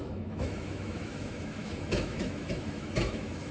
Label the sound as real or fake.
fake